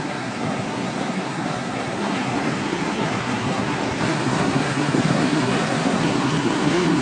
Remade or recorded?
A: remade